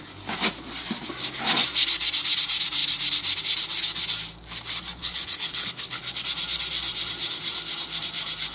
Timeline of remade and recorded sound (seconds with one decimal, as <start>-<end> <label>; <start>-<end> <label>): 0.0-5.0 recorded; 5.0-6.0 remade; 6.0-8.5 recorded